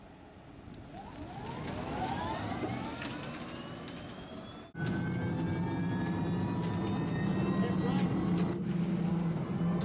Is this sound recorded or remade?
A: recorded